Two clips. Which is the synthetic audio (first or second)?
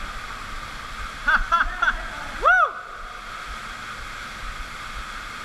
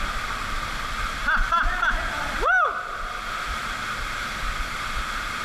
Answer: second